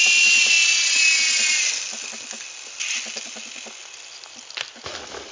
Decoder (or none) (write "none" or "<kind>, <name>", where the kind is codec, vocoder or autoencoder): none